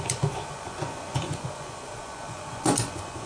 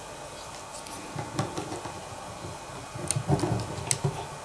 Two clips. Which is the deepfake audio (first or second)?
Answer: first